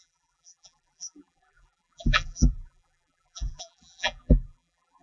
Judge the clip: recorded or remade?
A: remade